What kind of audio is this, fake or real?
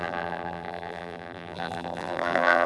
fake